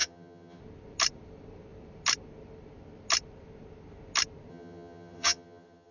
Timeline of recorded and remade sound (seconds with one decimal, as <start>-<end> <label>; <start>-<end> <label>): 0.0-0.6 remade; 0.6-4.5 recorded; 4.5-5.9 remade